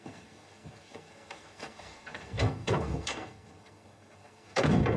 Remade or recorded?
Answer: remade